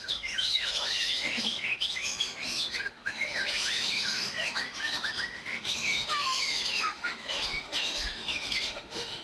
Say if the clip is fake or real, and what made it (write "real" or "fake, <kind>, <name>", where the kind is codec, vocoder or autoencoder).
fake, autoencoder, DAC-VAE